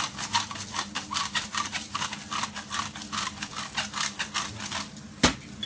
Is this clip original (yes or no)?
yes